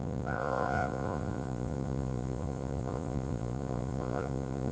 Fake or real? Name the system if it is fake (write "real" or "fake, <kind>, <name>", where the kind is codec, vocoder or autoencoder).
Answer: fake, vocoder, Vocos